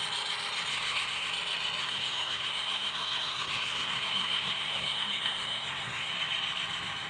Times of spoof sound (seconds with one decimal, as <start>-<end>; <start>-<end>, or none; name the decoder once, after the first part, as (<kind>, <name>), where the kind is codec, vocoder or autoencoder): 0.7-1.3 (codec, SNAC); 1.8-6.1